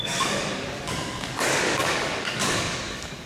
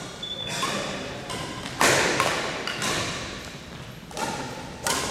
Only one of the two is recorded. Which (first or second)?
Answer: second